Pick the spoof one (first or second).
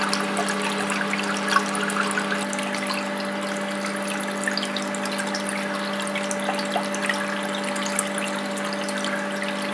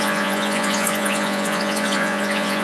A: second